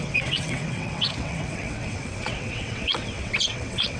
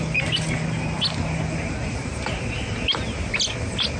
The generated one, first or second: first